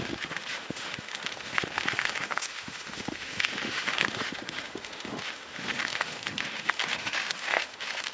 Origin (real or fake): fake